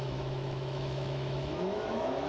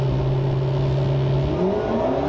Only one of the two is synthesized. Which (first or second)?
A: first